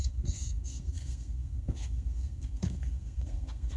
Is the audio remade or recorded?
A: remade